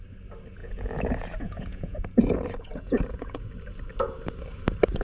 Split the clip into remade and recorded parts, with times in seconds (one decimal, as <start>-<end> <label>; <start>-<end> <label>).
0.0-0.6 recorded; 0.6-3.5 remade; 3.5-5.0 recorded